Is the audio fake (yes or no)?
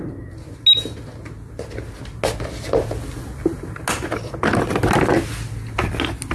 no